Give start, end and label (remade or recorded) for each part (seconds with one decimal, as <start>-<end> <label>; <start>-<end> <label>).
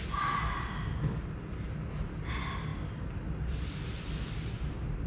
0.0-5.1 recorded